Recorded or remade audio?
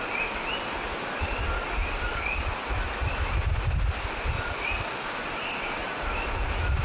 recorded